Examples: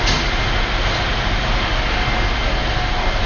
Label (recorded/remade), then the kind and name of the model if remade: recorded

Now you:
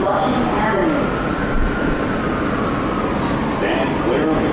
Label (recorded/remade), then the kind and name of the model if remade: recorded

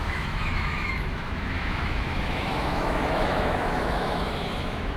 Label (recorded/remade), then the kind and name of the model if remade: remade, autoencoder, DAC-VAE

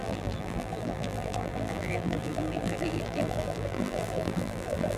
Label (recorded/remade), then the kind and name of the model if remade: remade, vocoder, BigVGAN v2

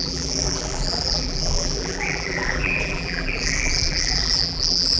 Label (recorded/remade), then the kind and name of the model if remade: remade, vocoder, BigVGAN v2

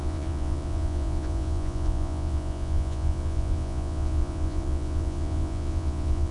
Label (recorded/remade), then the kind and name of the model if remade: remade, vocoder, Vocos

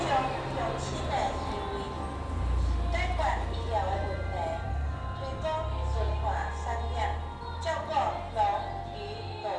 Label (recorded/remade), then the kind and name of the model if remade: recorded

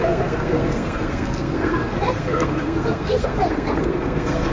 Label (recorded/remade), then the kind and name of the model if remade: remade, codec, SNAC